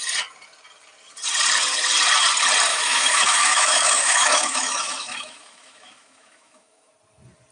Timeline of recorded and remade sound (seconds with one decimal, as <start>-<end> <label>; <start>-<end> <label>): 0.0-2.7 recorded; 2.7-6.9 remade; 6.9-7.5 recorded